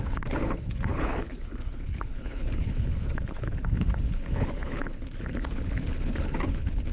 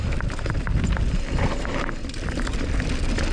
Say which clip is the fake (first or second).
first